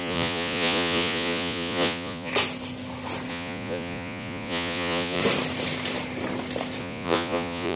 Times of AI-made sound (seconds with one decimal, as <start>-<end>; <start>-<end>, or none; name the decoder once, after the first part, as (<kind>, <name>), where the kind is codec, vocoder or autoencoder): 0.0-2.3 (vocoder, Vocos); 3.3-5.2; 6.8-7.8